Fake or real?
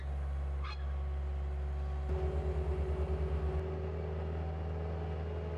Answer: real